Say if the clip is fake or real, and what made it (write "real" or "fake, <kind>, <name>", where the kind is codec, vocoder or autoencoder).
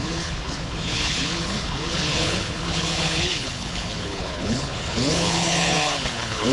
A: fake, codec, HILCodec